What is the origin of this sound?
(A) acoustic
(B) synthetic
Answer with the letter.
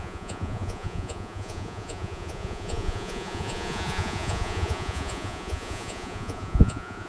B